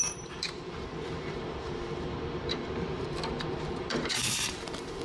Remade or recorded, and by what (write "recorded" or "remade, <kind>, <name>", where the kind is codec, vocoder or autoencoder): remade, vocoder, BigVGAN v2